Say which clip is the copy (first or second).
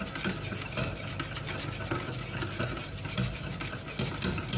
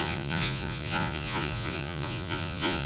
second